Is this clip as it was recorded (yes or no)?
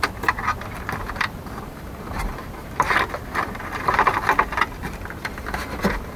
no